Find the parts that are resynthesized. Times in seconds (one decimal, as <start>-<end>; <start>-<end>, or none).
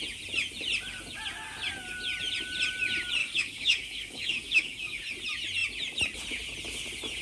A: 3.2-5.0